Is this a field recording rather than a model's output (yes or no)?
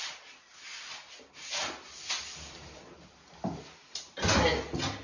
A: yes